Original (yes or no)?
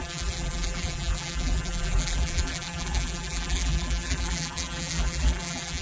no